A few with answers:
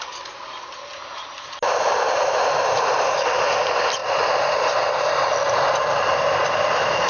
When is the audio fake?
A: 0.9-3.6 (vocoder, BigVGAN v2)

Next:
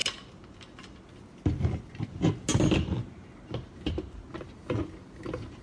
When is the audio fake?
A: none

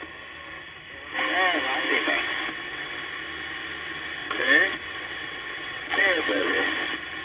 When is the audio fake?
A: 1.9-3.0 (vocoder, WaveNeXt); 4.2-6.7

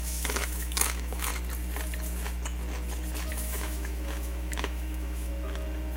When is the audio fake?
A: 0.0-1.3 (autoencoder, DAC-VAE); 3.3-5.3

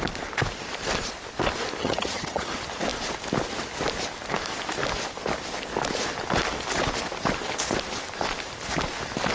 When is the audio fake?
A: 1.8-2.5 (vocoder, HiFi-GAN)

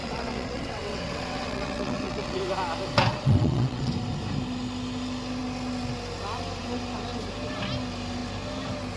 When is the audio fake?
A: 0.0-2.4 (vocoder, WaveNeXt); 3.1-3.9

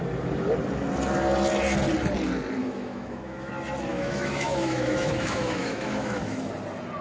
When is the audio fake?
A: 2.6-3.5 (autoencoder, DAC-VAE); 3.9-6.5

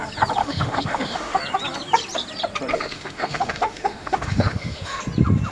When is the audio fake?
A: 0.4-1.4 (autoencoder, DAC-VAE); 2.7-5.0